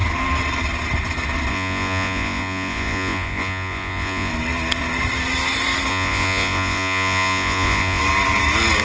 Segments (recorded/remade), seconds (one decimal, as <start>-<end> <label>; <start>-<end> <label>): 0.0-1.5 recorded; 1.5-4.3 remade; 4.3-5.9 recorded; 5.9-8.0 remade; 8.0-8.8 recorded